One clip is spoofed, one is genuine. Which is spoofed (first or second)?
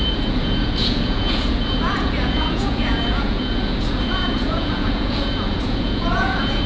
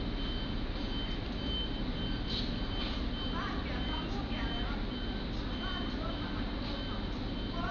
first